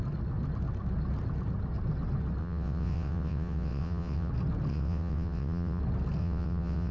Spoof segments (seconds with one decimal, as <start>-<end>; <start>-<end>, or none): 2.4-4.3; 4.7-5.8; 6.2-6.9